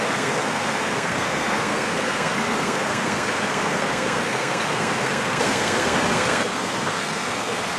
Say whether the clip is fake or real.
fake